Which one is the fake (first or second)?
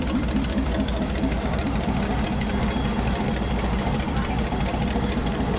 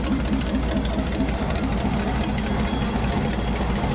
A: first